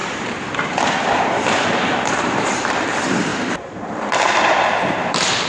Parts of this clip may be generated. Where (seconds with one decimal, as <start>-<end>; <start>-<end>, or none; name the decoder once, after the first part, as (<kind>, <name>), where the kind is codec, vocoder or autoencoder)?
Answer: 0.0-5.5 (vocoder, BigVGAN v2)